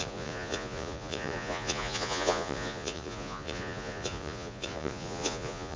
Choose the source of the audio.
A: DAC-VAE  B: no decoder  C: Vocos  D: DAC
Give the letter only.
C